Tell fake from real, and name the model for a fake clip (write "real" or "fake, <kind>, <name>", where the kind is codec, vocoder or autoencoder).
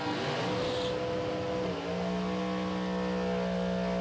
real